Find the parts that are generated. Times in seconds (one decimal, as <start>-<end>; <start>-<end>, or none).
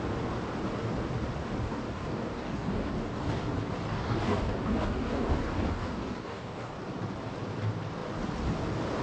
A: 1.7-3.5; 3.9-6.7